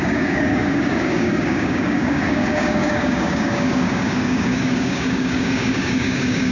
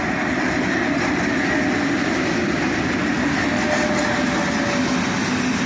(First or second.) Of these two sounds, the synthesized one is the first